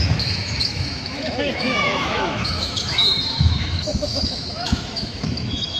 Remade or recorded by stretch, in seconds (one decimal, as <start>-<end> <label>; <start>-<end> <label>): 0.0-5.8 remade